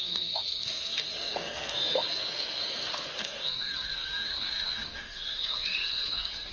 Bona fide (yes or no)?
no